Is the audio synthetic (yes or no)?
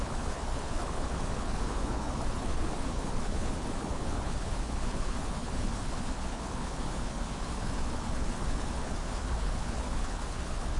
yes